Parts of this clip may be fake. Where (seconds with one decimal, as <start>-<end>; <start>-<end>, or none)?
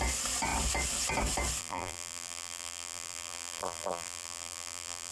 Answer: 1.6-5.1